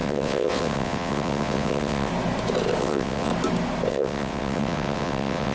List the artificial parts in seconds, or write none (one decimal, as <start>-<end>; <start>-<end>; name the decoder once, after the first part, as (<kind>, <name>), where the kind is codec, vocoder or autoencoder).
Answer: 0.0-2.1 (vocoder, WaveNeXt); 2.8-3.3; 3.9-5.5

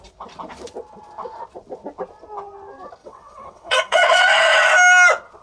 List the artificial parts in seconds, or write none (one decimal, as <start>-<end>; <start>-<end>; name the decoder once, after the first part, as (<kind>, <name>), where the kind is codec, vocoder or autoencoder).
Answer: 3.0-4.7 (vocoder, WaveNeXt)